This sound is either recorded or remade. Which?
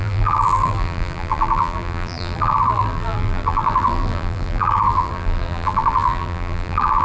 remade